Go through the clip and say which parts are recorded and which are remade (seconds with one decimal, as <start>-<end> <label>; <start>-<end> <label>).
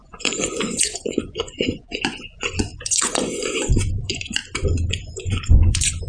0.0-4.4 remade; 4.4-4.9 recorded; 4.9-6.1 remade